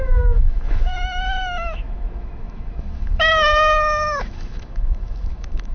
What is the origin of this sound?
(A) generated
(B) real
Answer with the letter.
A